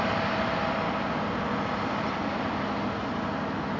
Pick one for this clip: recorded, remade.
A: recorded